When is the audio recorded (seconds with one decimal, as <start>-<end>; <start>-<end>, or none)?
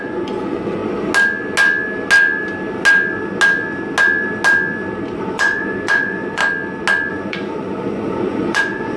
0.8-5.2; 6.4-7.1